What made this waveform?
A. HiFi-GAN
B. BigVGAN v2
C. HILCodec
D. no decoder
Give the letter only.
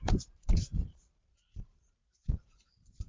B